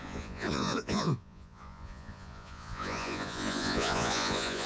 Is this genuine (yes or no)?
no